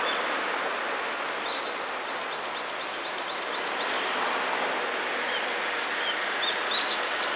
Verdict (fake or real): real